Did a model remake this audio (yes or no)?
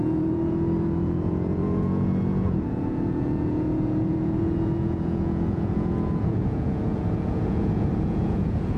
yes